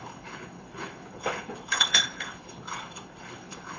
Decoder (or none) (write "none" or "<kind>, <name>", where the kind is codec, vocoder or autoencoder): codec, HILCodec